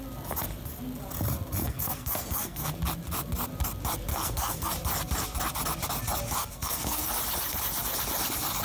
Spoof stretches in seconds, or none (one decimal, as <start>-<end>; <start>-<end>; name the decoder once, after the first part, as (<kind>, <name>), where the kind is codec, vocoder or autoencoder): 1.6-2.7 (codec, SNAC); 4.1-4.7; 6.4-7.1